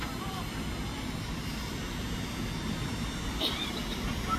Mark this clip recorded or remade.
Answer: remade